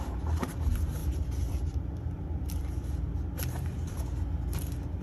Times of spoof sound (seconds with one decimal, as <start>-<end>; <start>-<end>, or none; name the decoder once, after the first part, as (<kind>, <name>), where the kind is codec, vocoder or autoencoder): 1.0-4.0 (vocoder, BigVGAN v2)